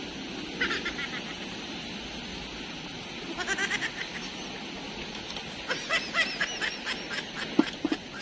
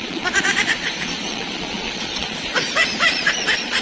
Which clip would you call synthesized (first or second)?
second